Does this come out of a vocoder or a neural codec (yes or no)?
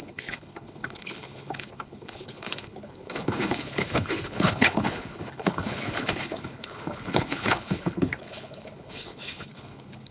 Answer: yes